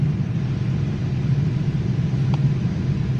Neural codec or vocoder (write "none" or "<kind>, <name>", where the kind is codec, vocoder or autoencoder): none